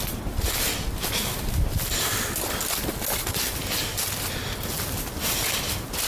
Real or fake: real